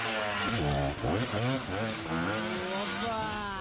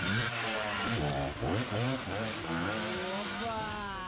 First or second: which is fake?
second